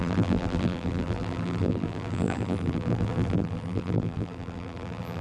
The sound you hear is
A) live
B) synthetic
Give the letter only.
B